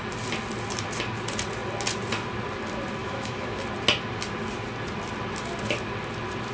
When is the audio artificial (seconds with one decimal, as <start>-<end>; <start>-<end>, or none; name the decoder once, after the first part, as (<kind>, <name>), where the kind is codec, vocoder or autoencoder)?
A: 3.0-3.6 (autoencoder, DAC-VAE)